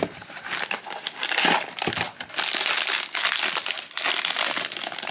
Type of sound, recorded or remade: recorded